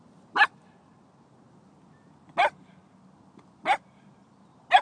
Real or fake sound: real